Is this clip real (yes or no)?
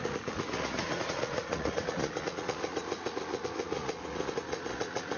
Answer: no